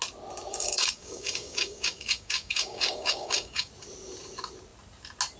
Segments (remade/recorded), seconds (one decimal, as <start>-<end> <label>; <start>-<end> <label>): 0.0-0.5 recorded; 0.5-3.7 remade; 3.7-5.4 recorded